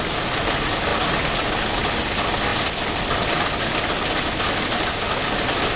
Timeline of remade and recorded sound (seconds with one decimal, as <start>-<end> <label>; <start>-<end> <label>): 0.0-5.8 recorded